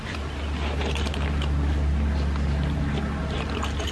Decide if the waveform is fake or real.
real